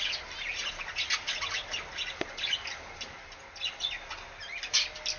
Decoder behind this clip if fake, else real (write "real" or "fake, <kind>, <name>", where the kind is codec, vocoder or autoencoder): real